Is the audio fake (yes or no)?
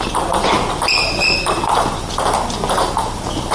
yes